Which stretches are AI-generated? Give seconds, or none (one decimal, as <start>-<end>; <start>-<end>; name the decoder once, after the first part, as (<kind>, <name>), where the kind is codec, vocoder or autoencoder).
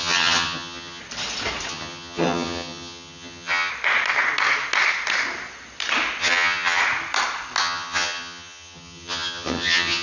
0.0-1.0 (vocoder, HiFi-GAN); 1.7-3.7; 6.2-6.8; 7.6-10.0